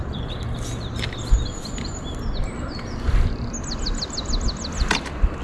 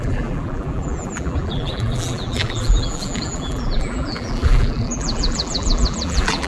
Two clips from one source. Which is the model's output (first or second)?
second